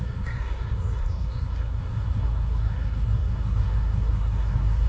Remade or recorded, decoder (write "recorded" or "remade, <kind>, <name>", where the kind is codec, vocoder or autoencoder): remade, codec, SNAC